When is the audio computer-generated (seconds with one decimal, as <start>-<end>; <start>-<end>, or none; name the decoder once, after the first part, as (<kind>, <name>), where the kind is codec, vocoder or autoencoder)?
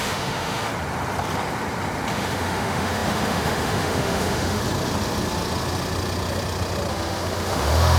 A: 0.0-0.7 (autoencoder, DAC-VAE); 2.1-4.6; 6.9-8.0